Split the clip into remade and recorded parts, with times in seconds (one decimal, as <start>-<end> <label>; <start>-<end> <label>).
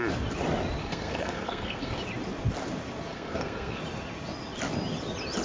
0.0-0.8 recorded; 0.8-2.0 remade; 2.0-3.1 recorded; 3.1-3.8 remade; 3.8-5.4 recorded